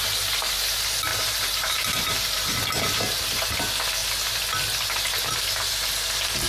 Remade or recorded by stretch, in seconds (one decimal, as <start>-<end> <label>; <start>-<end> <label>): 0.0-1.1 recorded; 1.1-2.2 remade; 2.2-6.5 recorded